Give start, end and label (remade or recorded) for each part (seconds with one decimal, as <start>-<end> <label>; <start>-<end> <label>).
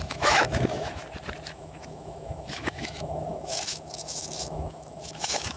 0.0-1.0 remade; 1.0-1.5 recorded; 1.5-5.6 remade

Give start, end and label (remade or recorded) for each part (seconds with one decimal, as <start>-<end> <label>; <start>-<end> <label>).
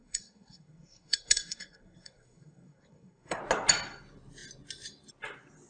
0.0-3.4 remade; 3.4-5.7 recorded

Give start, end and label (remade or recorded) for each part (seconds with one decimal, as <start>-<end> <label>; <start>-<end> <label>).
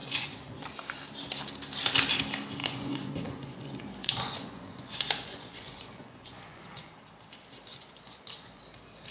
0.0-0.7 remade; 0.7-2.6 recorded; 2.6-6.9 remade; 6.9-7.7 recorded; 7.7-8.6 remade; 8.6-9.1 recorded